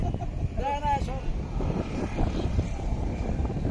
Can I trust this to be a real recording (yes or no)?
yes